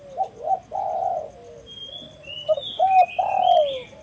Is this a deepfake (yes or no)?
no